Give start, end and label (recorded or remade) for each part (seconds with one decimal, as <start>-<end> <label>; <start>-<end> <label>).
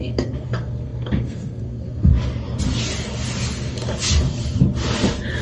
0.0-2.1 remade; 2.1-5.4 recorded